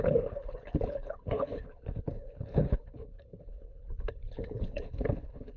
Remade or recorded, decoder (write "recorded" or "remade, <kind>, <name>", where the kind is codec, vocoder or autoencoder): remade, codec, HILCodec